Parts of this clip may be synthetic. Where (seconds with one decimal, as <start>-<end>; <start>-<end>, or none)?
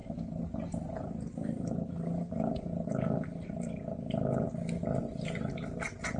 0.0-2.5; 5.0-6.2